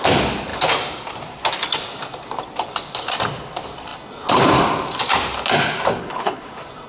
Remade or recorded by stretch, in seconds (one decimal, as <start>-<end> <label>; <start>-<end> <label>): 0.0-6.0 recorded; 6.0-6.5 remade; 6.5-6.9 recorded